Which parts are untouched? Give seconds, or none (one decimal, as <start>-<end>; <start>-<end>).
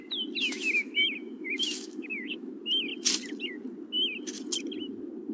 0.0-0.4; 2.5-5.3